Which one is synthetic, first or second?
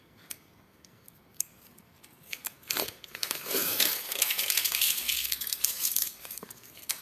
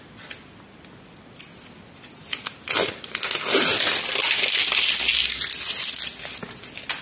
first